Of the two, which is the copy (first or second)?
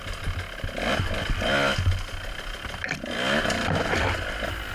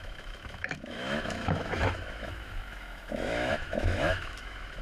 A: second